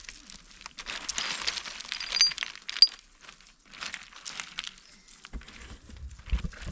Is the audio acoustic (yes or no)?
yes